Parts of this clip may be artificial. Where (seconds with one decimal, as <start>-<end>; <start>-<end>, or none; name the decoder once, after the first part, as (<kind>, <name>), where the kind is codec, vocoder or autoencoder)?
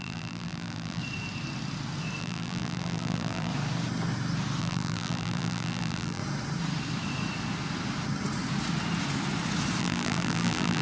0.0-1.0 (vocoder, BigVGAN v2); 2.2-3.5; 4.6-6.2; 9.8-10.8